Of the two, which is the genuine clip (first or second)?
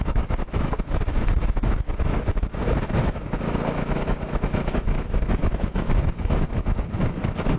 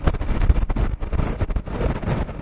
second